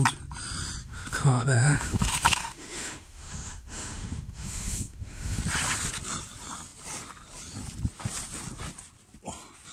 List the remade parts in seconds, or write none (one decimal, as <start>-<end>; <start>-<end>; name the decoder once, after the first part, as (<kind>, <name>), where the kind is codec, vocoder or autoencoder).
0.8-5.4 (autoencoder, DAC-VAE)